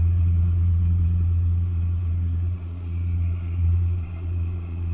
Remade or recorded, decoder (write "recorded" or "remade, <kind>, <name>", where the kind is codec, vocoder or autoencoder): remade, vocoder, Vocos